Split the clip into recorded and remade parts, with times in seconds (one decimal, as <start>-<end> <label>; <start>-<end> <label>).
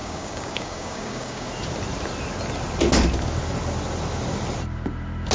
0.0-1.5 remade; 1.5-5.3 recorded